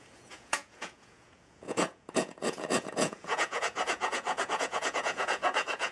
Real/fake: fake